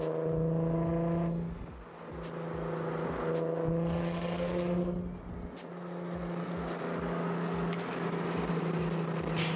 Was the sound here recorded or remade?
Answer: recorded